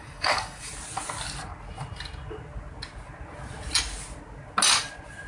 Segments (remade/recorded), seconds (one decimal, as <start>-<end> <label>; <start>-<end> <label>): 0.0-0.7 remade; 0.7-5.3 recorded